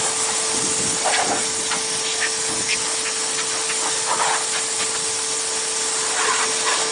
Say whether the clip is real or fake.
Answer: real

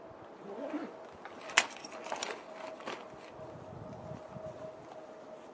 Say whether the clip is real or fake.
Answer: real